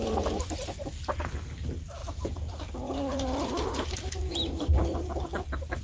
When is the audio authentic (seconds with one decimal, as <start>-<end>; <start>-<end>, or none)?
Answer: 0.0-2.0; 2.6-3.1; 5.2-5.8